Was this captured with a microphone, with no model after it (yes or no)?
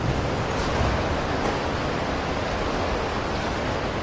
yes